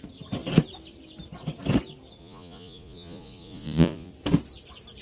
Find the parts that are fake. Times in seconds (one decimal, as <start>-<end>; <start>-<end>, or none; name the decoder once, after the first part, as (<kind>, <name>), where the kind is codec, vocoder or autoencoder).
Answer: 2.2-4.1 (vocoder, Vocos)